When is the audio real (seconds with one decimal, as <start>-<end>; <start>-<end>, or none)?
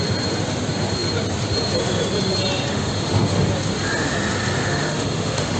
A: 0.0-2.7; 3.5-4.6